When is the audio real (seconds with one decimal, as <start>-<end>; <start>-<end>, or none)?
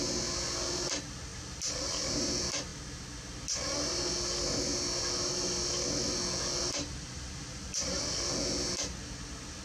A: 0.0-1.3; 2.3-6.6; 8.0-9.6